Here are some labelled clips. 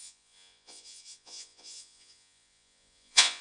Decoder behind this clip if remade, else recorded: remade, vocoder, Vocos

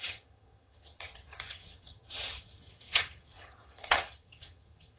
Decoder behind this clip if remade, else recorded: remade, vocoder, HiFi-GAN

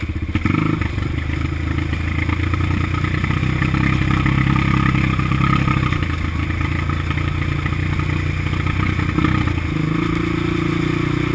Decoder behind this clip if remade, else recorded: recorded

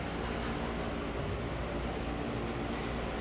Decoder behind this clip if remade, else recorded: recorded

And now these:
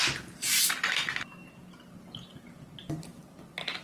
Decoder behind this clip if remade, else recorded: recorded